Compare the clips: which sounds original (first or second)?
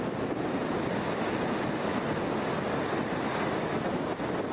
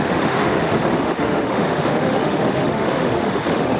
first